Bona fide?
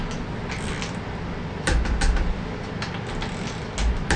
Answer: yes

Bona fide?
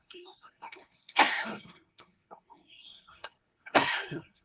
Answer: no